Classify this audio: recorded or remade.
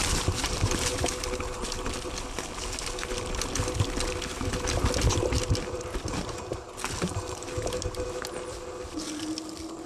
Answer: recorded